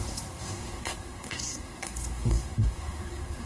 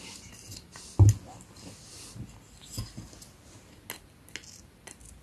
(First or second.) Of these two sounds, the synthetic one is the first